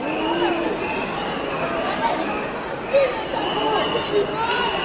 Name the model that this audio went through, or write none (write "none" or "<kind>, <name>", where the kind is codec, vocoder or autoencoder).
none